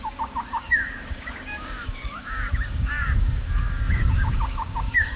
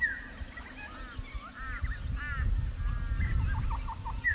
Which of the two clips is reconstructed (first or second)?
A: first